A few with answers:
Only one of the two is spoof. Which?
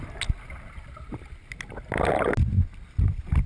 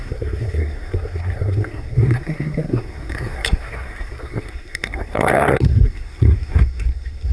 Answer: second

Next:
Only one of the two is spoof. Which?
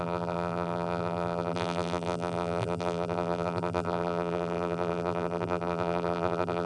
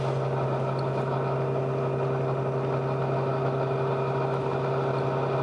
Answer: first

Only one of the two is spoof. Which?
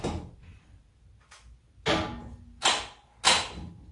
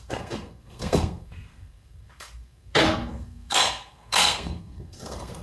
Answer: second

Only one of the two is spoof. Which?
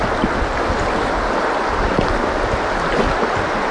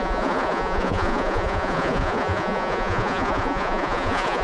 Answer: second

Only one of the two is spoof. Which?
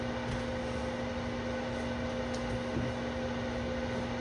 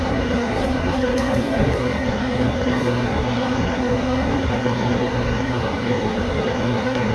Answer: second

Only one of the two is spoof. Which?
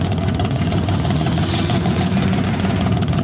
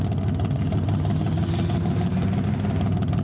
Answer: first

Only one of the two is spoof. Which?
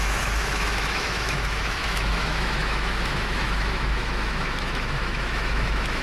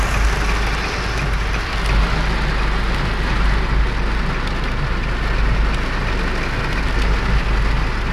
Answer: first